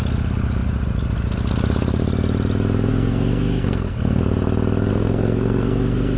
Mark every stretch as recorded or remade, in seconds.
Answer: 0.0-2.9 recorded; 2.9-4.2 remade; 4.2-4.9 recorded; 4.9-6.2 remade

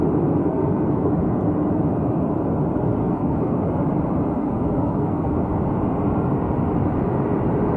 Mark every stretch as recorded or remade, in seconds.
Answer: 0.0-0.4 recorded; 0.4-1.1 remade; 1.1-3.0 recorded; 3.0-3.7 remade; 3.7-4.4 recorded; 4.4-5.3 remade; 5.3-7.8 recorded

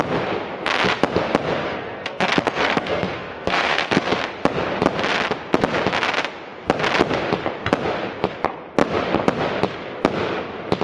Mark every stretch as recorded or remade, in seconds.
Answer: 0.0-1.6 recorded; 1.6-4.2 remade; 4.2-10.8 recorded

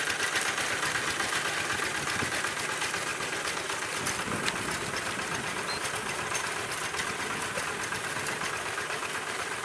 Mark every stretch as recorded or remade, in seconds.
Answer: 0.0-9.6 recorded